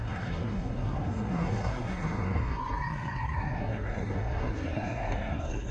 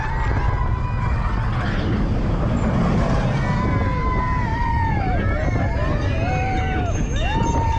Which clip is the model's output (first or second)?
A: first